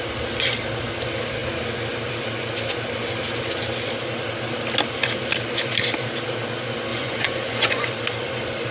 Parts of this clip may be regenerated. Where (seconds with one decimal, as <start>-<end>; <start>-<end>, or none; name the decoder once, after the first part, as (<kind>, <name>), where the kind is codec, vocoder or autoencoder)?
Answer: 6.9-7.9 (vocoder, Vocos)